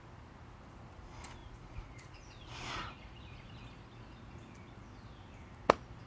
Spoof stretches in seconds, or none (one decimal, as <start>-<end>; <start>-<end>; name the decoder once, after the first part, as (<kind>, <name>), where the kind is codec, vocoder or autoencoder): 1.4-3.5 (vocoder, Vocos)